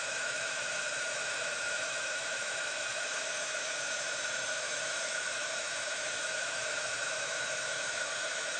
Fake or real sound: fake